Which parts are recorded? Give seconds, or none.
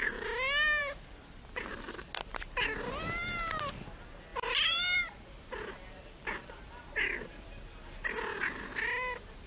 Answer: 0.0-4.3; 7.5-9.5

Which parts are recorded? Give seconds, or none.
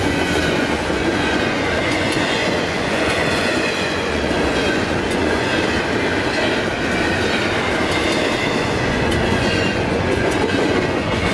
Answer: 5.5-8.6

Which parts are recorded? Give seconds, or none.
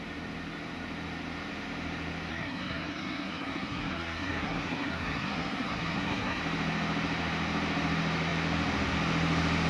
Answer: 0.0-2.3; 6.4-9.7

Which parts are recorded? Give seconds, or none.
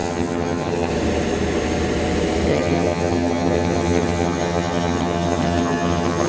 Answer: 0.9-2.5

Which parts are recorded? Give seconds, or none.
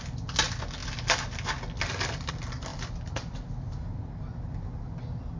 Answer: 0.0-5.4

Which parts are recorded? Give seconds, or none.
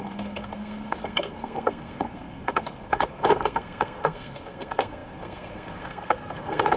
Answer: none